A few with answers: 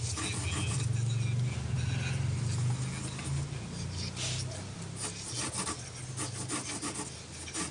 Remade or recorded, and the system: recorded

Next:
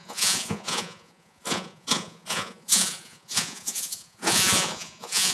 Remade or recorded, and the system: remade, vocoder, Vocos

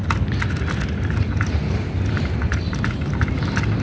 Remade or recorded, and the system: recorded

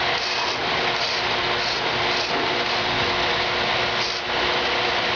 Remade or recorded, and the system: recorded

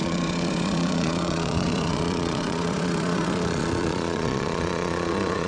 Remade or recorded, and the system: remade, vocoder, Vocos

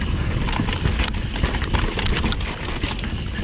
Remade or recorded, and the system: recorded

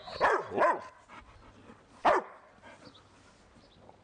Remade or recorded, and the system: recorded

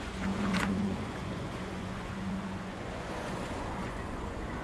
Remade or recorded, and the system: remade, vocoder, Vocos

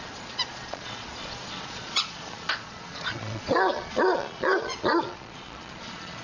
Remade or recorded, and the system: remade, vocoder, Vocos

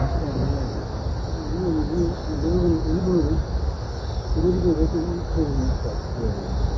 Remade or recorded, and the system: recorded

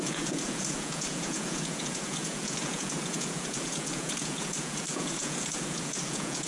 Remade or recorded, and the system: remade, vocoder, Vocos